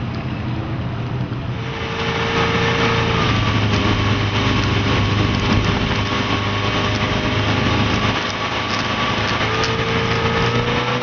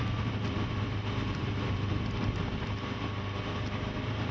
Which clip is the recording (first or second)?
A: first